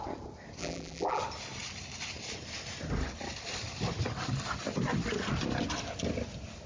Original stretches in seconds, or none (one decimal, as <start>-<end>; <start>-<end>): 0.0-0.6; 1.2-6.7